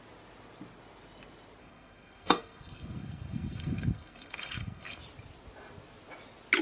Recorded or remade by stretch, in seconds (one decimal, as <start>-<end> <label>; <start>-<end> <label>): 0.0-1.6 recorded; 1.6-5.0 remade; 5.0-6.6 recorded